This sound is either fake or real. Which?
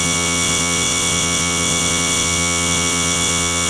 fake